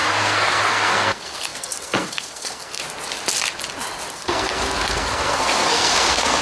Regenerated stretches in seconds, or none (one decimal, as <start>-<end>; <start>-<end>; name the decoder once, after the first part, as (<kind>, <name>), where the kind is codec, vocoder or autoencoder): 0.0-2.8 (codec, SNAC); 4.1-6.4

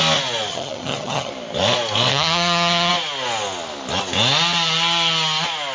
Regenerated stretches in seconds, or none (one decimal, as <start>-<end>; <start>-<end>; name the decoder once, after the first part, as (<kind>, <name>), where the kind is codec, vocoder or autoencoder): 0.5-1.3 (vocoder, HiFi-GAN); 2.1-2.9

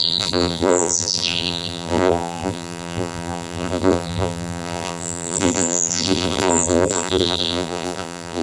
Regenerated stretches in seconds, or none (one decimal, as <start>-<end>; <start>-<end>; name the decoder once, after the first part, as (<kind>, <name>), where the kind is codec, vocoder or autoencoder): 0.0-8.4 (vocoder, BigVGAN v2)

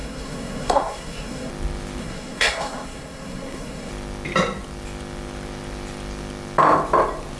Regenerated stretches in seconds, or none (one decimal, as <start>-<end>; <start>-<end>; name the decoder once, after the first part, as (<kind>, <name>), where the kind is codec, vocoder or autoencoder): 0.0-1.5 (codec, SNAC); 2.0-3.9

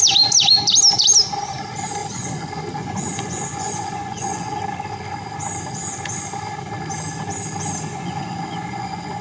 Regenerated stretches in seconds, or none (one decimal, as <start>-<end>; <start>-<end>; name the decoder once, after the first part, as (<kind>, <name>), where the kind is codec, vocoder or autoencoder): 2.0-4.6 (vocoder, Vocos); 7.9-9.2

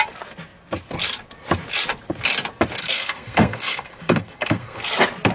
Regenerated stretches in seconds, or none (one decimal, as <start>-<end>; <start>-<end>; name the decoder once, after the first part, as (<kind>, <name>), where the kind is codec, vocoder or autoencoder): 2.8-4.8 (codec, SNAC)